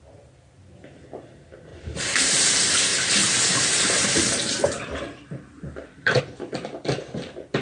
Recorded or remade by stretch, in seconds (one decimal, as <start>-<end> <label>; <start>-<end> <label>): 0.0-1.7 recorded; 1.7-2.5 remade; 2.5-2.9 recorded; 2.9-6.2 remade; 6.2-7.6 recorded